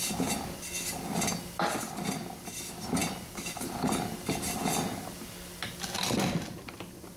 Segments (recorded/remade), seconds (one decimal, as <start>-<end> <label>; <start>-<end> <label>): 0.0-3.0 recorded; 3.0-3.7 remade; 3.7-7.2 recorded